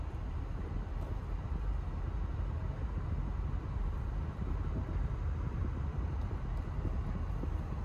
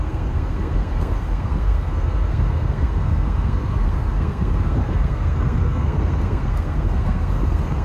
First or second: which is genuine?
first